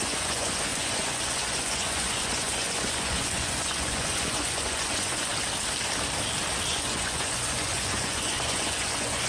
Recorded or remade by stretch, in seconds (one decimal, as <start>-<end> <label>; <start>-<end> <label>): 0.0-5.3 remade; 5.3-6.7 recorded; 6.7-9.3 remade